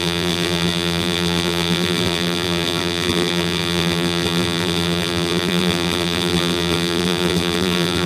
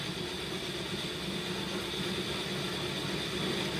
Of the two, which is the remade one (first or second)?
first